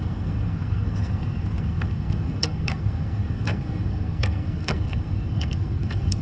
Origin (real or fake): fake